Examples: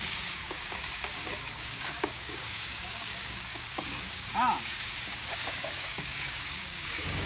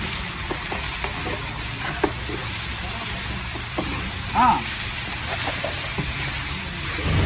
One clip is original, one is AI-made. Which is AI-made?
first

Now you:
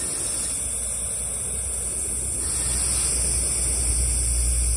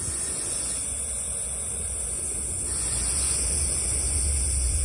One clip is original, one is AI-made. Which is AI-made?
second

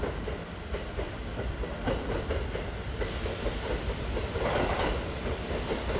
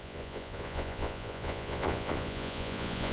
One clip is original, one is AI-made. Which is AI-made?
second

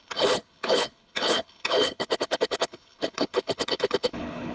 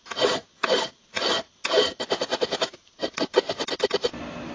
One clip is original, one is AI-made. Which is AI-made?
first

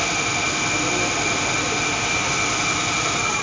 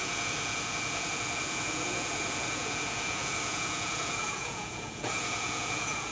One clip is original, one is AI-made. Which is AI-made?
second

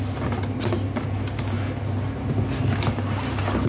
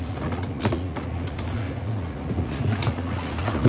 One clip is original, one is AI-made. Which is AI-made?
second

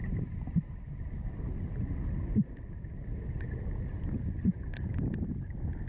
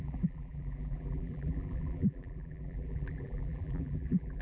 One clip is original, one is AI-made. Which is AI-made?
second